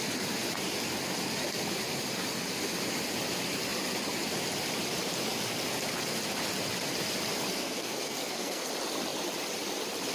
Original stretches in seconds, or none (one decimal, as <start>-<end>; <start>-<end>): 0.0-7.5; 8.7-10.1